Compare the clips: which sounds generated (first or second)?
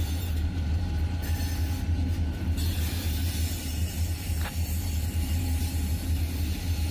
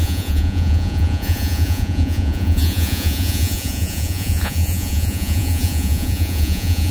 second